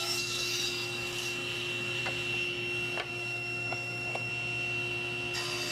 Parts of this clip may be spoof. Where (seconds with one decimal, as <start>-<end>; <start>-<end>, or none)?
0.0-2.0; 3.1-4.3